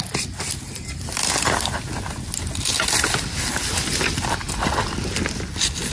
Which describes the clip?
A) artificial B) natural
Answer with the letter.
B